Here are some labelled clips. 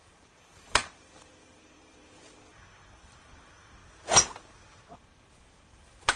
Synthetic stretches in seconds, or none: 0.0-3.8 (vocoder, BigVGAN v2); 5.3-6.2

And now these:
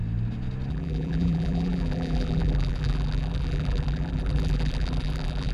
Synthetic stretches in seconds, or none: 0.7-5.5 (vocoder, BigVGAN v2)

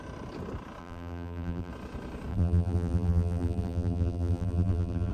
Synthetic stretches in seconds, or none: 0.8-1.7 (vocoder, BigVGAN v2); 2.3-5.1

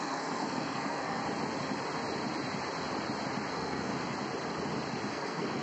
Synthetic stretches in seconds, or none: 0.0-1.2 (codec, SNAC); 3.5-3.9; 5.1-5.6

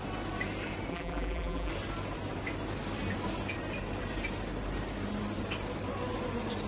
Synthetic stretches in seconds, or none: 0.9-1.7 (vocoder, BigVGAN v2)

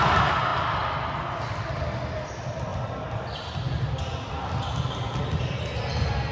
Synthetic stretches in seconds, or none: 0.5-1.2 (vocoder, BigVGAN v2)

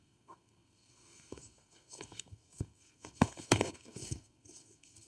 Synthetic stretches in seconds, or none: 0.0-5.1 (codec, SNAC)

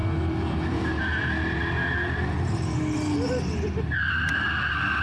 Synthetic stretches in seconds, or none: none